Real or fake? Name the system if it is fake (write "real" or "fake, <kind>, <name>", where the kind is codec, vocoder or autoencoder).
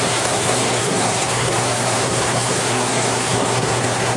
fake, codec, SNAC